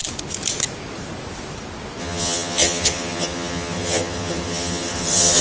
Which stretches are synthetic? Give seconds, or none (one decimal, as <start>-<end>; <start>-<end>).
2.0-5.4